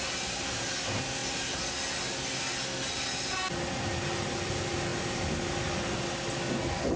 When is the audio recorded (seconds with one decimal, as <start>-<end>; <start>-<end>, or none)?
0.0-7.0